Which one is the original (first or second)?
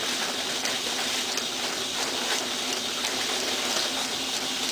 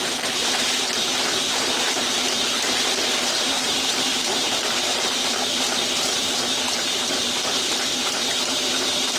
first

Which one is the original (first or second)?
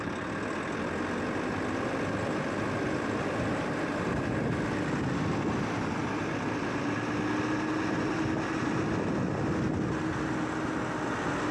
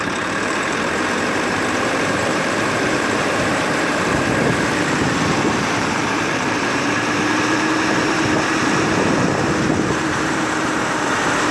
first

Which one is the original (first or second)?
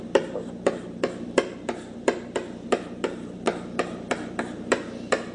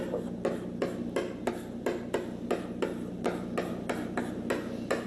second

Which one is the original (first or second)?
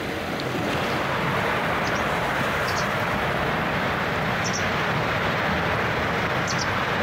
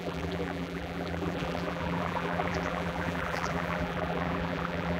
first